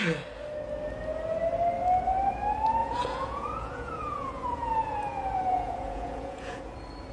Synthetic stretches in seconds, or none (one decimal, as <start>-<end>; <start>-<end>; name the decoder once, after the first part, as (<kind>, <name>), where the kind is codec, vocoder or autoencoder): 2.8-6.6 (vocoder, Vocos)